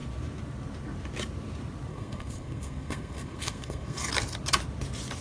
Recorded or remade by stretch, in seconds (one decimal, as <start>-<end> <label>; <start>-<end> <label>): 0.0-1.9 recorded; 1.9-4.1 remade; 4.1-5.2 recorded